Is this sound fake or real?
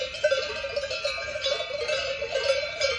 fake